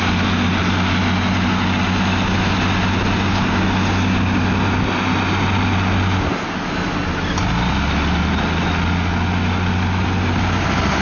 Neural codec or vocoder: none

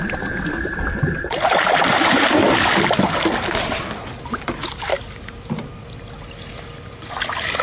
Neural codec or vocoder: none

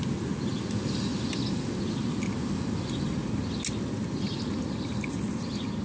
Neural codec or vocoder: none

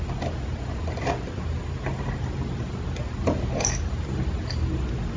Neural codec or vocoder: none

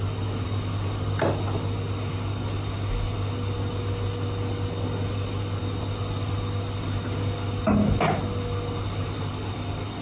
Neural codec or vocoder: none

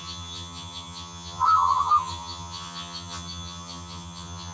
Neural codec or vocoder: vocoder, HiFi-GAN